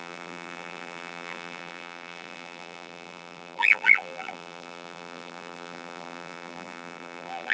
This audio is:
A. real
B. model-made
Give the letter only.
B